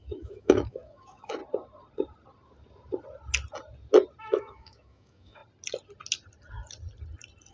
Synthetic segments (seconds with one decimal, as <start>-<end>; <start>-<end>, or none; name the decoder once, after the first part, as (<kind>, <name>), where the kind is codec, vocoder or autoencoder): 0.0-1.4 (autoencoder, DAC-VAE); 4.2-5.4